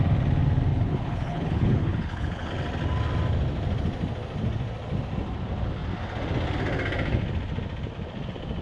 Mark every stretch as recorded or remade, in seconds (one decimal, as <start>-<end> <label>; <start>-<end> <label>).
0.0-0.7 recorded; 0.7-2.5 remade; 2.5-8.6 recorded